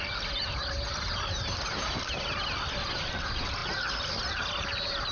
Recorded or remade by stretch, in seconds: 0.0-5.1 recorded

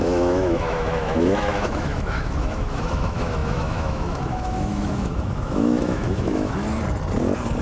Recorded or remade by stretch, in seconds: 0.0-6.6 remade; 6.6-7.6 recorded

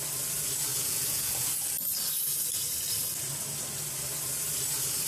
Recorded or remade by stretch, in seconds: 0.0-0.7 recorded; 0.7-1.6 remade; 1.6-5.1 recorded